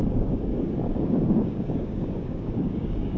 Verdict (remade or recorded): remade